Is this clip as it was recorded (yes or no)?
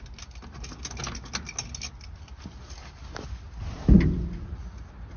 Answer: yes